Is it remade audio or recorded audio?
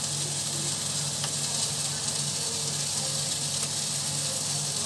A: recorded